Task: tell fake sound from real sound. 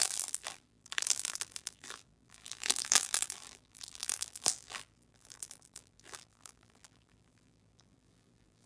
fake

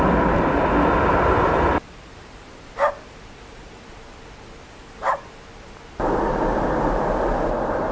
real